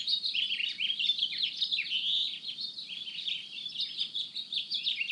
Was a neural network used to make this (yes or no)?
no